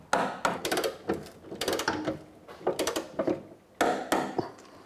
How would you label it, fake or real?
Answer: real